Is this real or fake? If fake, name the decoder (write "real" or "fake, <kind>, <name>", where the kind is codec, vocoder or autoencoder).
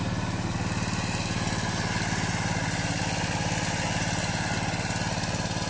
real